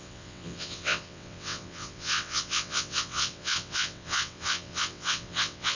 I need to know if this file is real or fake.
fake